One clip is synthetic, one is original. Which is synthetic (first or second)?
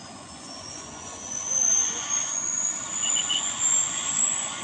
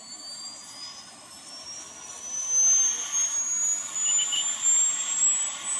first